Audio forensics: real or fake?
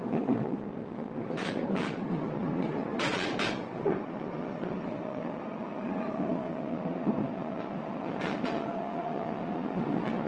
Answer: fake